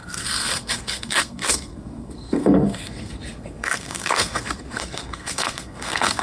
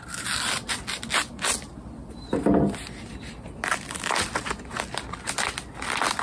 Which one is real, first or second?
second